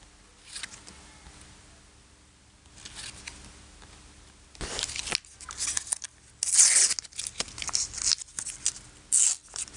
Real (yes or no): yes